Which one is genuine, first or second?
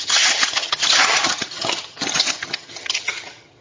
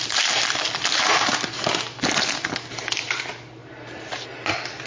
second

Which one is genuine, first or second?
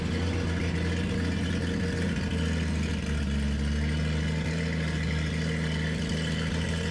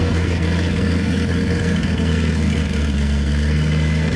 first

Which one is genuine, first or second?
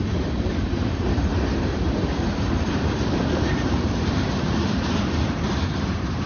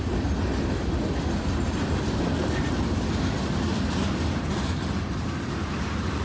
second